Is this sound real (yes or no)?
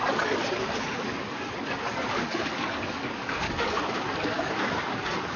no